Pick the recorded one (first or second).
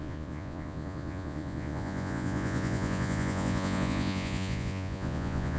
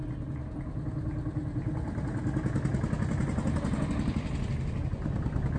second